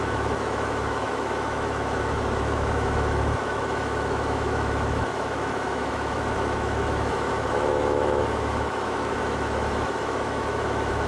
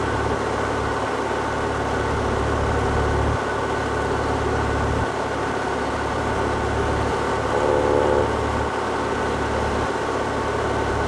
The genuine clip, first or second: second